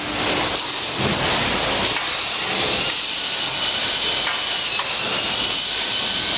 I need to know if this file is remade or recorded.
recorded